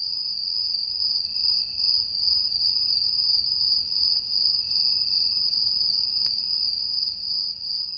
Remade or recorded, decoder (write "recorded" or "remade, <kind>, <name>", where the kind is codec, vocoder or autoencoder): recorded